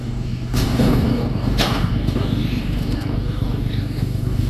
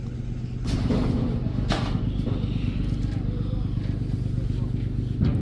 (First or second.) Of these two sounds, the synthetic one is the first